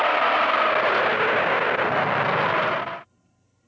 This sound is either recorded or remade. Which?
recorded